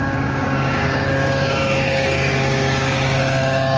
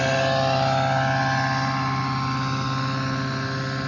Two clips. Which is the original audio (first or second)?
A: second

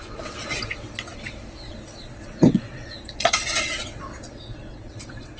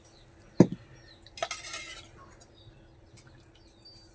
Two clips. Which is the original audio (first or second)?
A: second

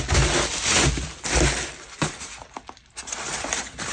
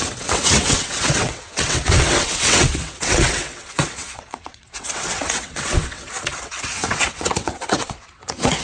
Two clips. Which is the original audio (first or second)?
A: first